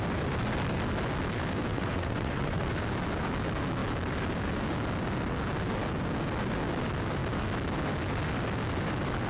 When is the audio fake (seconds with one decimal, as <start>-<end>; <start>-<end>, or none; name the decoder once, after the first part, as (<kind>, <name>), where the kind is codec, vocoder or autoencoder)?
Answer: 1.7-2.7 (vocoder, WaveNeXt)